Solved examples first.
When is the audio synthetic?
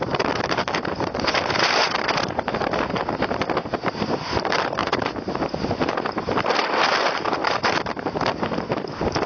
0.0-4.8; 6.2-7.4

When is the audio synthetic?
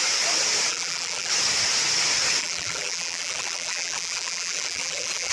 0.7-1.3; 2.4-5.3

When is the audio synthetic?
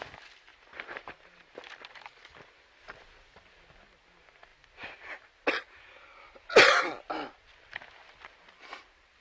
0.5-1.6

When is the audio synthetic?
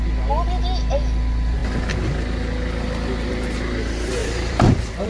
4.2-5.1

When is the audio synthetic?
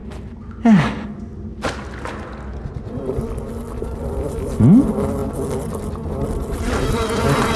3.8-5.2; 6.9-7.6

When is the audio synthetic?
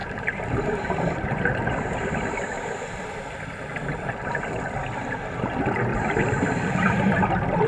0.0-4.6; 5.9-7.7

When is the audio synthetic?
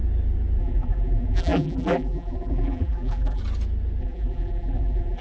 0.6-3.4; 4.0-5.2